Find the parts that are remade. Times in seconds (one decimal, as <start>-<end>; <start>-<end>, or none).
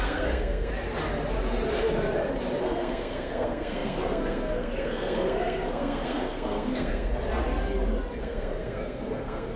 0.0-0.7; 2.6-7.1; 8.2-9.6